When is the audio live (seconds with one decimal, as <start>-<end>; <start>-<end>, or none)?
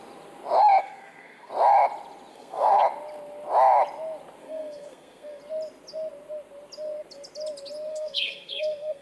0.0-0.8; 1.5-2.3; 2.8-4.4; 5.4-7.9